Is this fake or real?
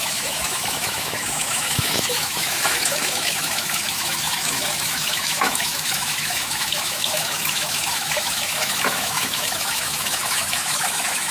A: fake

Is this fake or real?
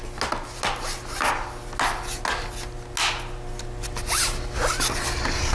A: real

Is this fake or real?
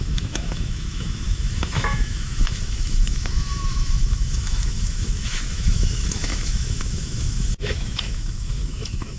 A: fake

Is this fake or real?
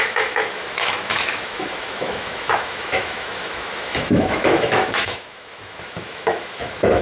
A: fake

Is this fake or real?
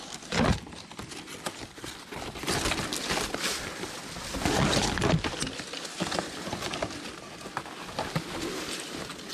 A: real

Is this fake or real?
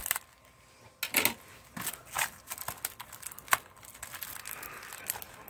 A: real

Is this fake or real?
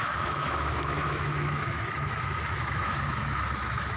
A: fake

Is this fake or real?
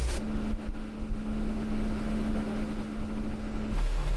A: fake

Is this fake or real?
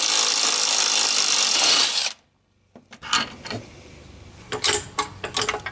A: real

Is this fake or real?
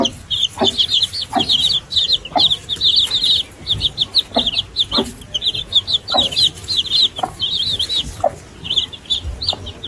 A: real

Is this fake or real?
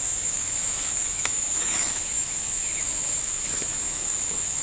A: fake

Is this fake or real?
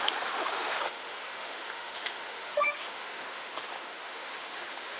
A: fake